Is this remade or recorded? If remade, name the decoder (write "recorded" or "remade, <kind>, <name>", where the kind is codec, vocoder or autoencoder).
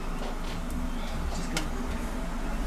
recorded